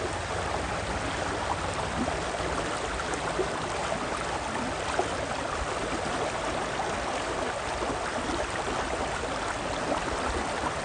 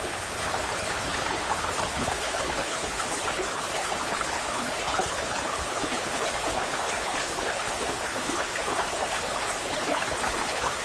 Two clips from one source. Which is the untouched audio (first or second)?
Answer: first